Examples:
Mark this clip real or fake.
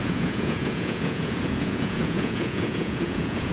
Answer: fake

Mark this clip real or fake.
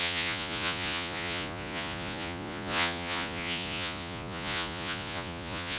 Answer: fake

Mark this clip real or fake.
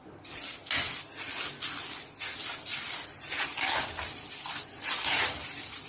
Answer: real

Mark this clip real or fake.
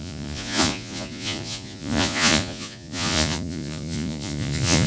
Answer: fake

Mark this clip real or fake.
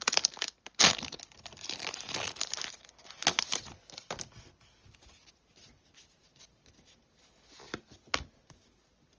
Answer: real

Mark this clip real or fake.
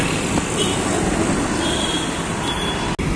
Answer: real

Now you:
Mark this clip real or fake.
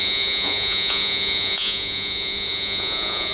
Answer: fake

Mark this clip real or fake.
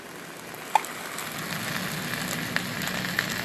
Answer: real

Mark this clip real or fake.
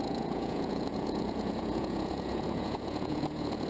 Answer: fake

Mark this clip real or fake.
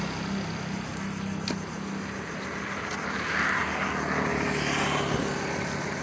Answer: real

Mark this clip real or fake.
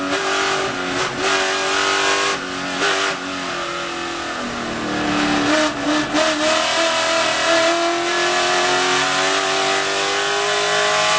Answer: real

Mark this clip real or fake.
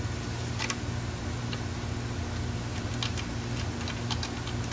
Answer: real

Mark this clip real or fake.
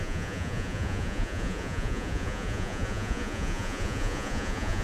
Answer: fake